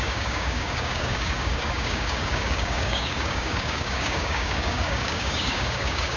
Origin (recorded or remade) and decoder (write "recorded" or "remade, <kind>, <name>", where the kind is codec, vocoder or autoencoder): remade, codec, DAC